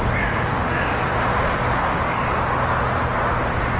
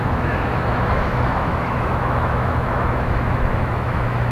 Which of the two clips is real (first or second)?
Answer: first